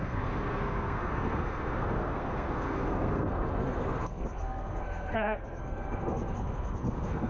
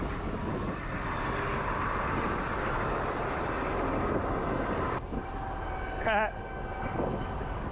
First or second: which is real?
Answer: second